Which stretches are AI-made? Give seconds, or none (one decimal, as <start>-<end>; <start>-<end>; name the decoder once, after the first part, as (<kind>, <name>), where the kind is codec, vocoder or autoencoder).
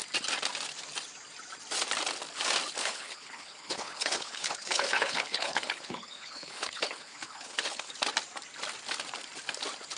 2.8-7.9 (codec, HILCodec)